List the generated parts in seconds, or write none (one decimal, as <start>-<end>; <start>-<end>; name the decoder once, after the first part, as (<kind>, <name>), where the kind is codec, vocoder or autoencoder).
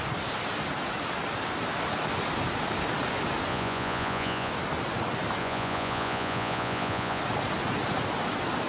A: 3.5-4.5 (vocoder, Vocos); 5.4-7.2